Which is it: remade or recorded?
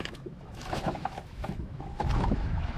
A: remade